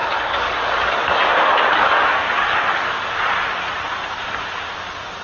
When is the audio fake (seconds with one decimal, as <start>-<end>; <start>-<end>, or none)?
0.0-3.1